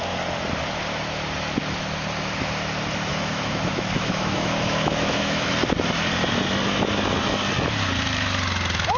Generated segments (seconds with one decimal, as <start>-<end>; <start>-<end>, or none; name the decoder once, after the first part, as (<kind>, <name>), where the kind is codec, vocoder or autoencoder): 3.1-5.5 (autoencoder, DAC-VAE)